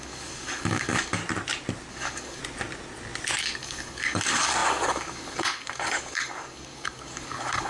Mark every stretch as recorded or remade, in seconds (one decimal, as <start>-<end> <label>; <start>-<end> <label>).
0.0-1.2 remade; 1.2-1.9 recorded; 1.9-2.4 remade; 2.4-3.4 recorded; 3.4-7.7 remade